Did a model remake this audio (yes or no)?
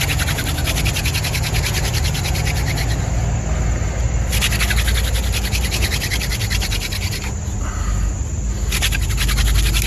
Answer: no